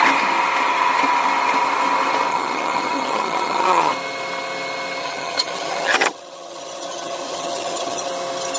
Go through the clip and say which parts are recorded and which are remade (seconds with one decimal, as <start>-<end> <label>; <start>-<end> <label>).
0.0-2.3 recorded; 2.3-3.9 remade; 3.9-5.0 recorded; 5.0-8.1 remade; 8.1-8.6 recorded